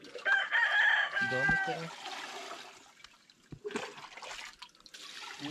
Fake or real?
real